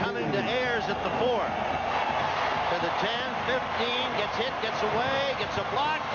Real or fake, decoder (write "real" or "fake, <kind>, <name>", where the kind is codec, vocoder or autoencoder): real